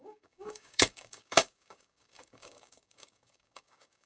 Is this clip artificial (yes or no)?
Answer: yes